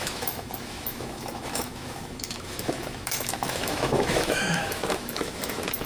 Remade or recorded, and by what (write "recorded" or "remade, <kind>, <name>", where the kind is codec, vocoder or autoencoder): remade, autoencoder, DAC-VAE